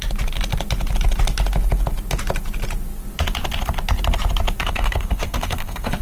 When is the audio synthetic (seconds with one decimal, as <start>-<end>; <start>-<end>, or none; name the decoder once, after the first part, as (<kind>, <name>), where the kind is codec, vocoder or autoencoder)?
4.6-6.0 (codec, SNAC)